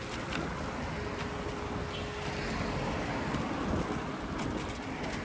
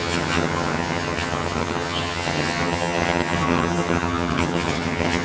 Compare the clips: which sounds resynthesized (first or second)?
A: second